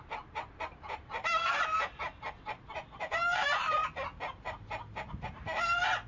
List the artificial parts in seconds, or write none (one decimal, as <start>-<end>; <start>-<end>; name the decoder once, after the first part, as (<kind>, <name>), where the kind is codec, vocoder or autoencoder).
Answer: 0.0-3.8 (vocoder, BigVGAN v2)